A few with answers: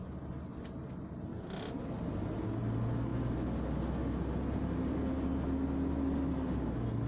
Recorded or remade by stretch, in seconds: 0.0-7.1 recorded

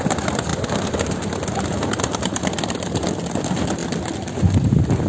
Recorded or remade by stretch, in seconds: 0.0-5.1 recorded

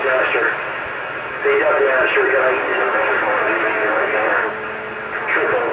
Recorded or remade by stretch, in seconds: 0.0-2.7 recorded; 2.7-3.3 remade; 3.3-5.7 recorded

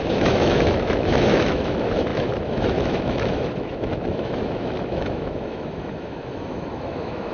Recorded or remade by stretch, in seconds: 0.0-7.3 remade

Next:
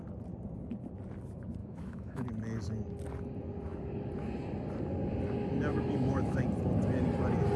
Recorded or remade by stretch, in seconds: 0.0-1.6 recorded; 1.6-2.3 remade; 2.3-5.7 recorded; 5.7-6.4 remade; 6.4-7.6 recorded

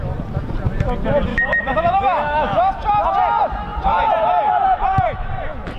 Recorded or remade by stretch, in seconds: 0.0-1.3 recorded; 1.3-2.7 remade; 2.7-5.8 recorded

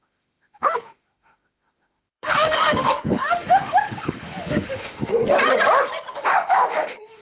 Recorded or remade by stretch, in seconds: 0.0-5.1 remade; 5.1-6.1 recorded; 6.1-7.2 remade

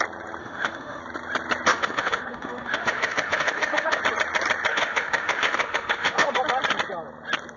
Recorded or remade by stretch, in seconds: 0.0-0.4 recorded; 0.4-1.0 remade; 1.0-1.7 recorded; 1.7-4.0 remade; 4.0-4.7 recorded; 4.7-6.4 remade; 6.4-7.6 recorded